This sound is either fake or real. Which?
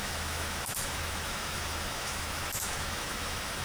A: fake